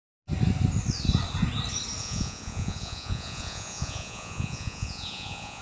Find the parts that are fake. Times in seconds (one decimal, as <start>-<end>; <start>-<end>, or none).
2.0-5.6

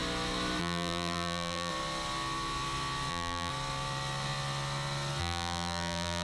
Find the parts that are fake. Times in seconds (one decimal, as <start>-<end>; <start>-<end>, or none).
0.6-1.7; 3.1-3.5; 5.2-6.2

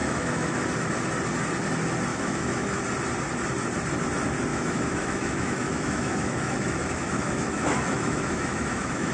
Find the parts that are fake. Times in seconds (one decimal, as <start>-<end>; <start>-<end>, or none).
0.0-0.6; 2.1-2.8; 4.5-9.1

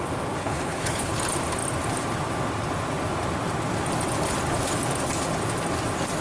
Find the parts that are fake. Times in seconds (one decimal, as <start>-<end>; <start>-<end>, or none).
0.4-1.1